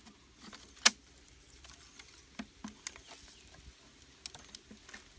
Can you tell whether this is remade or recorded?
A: recorded